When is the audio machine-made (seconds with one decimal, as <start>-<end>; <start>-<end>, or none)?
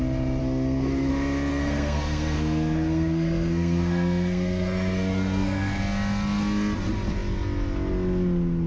0.4-1.1; 1.5-5.8